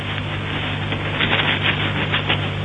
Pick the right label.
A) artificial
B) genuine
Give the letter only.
B